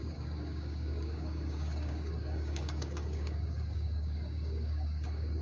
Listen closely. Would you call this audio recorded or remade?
remade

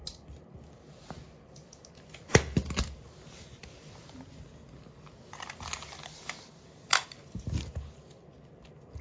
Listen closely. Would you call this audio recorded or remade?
recorded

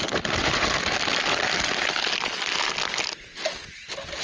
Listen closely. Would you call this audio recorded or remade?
recorded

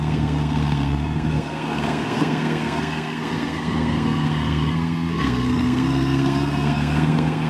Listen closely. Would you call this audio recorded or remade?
remade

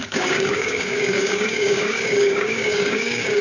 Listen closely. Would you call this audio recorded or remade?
remade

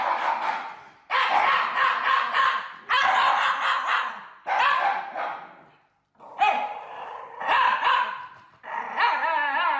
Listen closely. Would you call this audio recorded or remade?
recorded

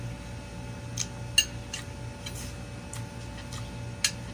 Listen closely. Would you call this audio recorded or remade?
recorded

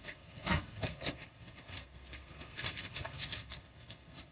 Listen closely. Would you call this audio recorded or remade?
remade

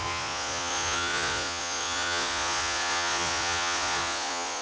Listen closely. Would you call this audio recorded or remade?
remade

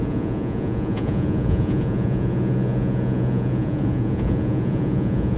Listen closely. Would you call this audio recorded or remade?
remade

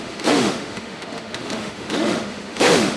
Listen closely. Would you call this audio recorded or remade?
remade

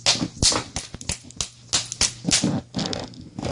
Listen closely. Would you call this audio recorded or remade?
recorded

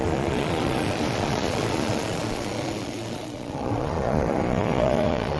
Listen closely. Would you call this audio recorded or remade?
remade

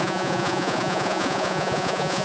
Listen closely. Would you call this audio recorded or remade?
remade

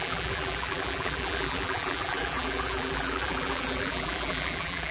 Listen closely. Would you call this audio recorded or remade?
remade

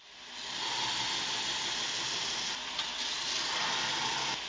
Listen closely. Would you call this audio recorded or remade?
recorded